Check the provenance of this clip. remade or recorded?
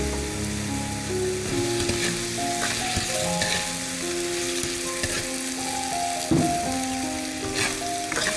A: recorded